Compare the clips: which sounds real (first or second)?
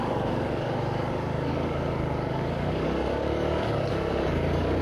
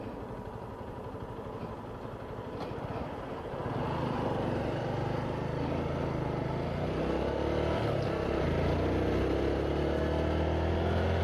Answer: second